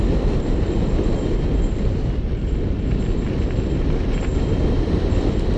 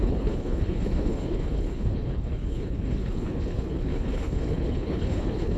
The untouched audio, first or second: first